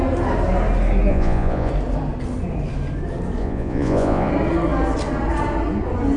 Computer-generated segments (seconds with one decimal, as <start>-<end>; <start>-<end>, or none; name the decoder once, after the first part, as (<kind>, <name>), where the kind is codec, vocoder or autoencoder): 1.1-1.7 (vocoder, Vocos); 3.4-4.3